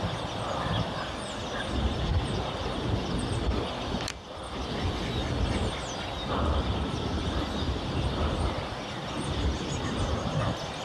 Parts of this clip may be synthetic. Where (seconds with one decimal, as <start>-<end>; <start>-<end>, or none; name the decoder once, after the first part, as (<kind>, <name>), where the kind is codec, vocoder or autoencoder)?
none